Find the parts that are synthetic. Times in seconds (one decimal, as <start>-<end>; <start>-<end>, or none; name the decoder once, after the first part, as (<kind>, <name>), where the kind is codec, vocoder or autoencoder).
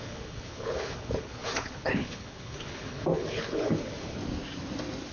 0.0-4.2 (codec, HILCodec)